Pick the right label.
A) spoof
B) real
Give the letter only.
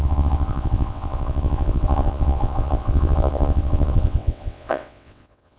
A